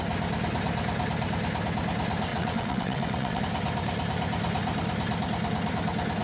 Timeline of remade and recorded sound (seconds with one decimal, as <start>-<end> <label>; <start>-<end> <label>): 0.0-2.3 recorded; 2.3-3.4 remade; 3.4-6.2 recorded